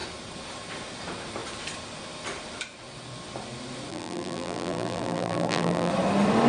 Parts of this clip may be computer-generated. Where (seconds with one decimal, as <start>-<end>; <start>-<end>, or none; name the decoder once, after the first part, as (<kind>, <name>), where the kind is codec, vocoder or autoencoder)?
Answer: 3.9-5.9 (vocoder, BigVGAN v2)